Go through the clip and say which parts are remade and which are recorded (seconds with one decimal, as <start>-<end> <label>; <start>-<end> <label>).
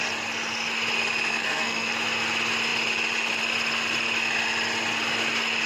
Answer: 0.0-1.3 recorded; 1.3-1.9 remade; 1.9-5.7 recorded